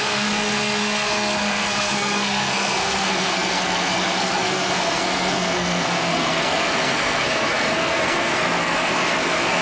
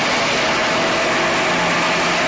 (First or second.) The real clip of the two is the second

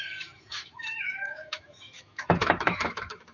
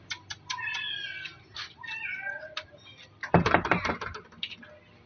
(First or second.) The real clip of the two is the second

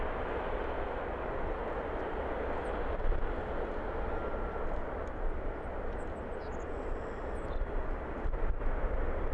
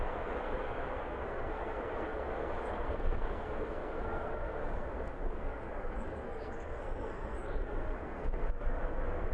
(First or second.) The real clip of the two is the first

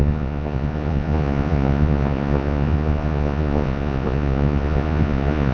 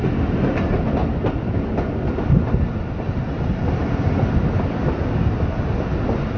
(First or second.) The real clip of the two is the second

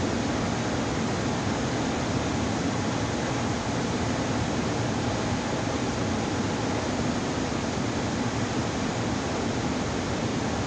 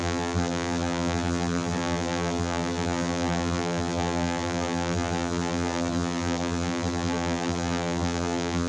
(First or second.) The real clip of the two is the first